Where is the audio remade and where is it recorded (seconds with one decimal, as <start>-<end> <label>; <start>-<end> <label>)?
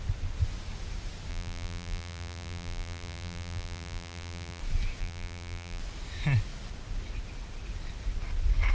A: 0.0-1.3 recorded; 1.3-4.6 remade; 4.6-5.0 recorded; 5.0-5.8 remade; 5.8-8.7 recorded